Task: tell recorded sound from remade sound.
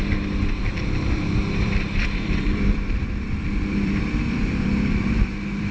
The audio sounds remade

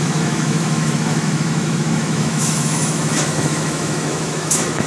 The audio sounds remade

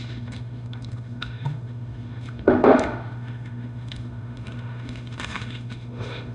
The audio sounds remade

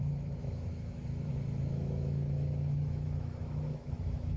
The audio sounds remade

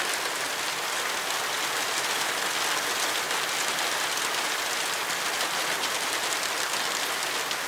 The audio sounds recorded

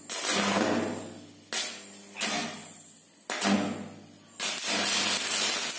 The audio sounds recorded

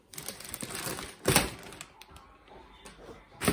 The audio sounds recorded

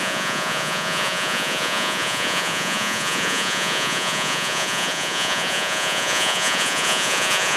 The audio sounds remade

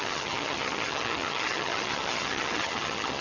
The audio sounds remade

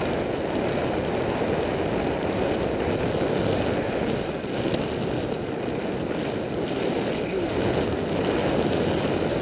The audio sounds recorded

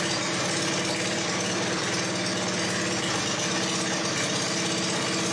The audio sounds recorded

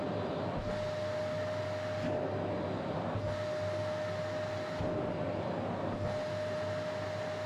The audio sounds recorded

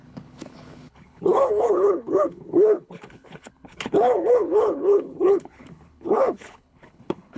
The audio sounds remade